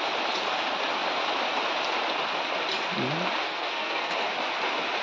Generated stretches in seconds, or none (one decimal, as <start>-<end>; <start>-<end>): 3.4-4.3